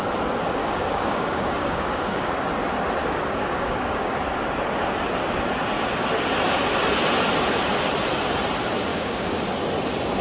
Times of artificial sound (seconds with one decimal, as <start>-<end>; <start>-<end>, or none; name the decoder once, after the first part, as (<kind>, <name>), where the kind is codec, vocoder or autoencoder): 0.6-2.3 (codec, DAC); 3.0-4.1; 8.9-9.4